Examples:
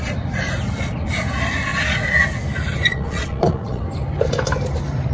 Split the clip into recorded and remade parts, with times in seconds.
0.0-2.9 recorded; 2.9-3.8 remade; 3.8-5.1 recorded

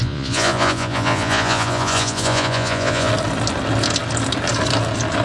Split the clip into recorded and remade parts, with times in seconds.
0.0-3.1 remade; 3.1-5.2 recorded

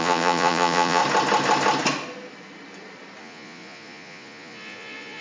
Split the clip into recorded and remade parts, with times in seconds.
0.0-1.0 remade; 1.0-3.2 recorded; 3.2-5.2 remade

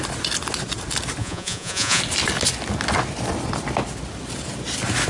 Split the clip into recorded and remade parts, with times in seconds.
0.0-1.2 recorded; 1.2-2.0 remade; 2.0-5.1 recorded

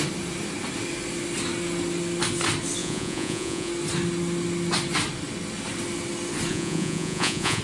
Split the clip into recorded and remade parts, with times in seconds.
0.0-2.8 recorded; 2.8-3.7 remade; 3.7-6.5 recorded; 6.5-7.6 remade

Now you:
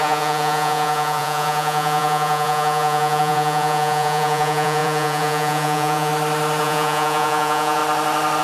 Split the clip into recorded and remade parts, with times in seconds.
0.0-6.1 remade; 6.1-6.6 recorded; 6.6-7.8 remade; 7.8-8.4 recorded

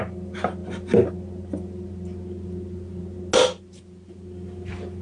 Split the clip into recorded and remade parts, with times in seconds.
0.0-5.0 recorded

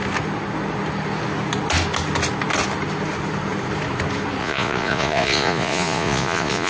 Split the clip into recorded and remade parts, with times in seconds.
0.0-4.4 recorded; 4.4-6.7 remade